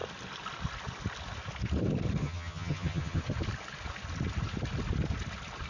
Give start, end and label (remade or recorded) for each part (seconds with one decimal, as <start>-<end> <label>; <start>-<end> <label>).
0.0-2.2 recorded; 2.2-3.2 remade; 3.2-5.7 recorded